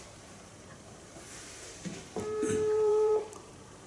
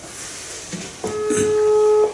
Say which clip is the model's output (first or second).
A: first